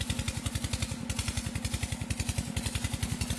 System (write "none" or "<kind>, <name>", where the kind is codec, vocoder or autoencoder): none